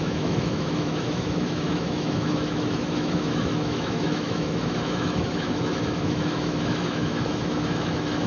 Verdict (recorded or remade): remade